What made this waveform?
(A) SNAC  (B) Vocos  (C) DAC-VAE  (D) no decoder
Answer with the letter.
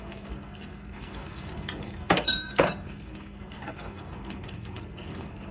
A